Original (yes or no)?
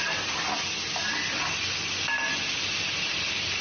yes